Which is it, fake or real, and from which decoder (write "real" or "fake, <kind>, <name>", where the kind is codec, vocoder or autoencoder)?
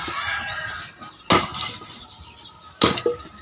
real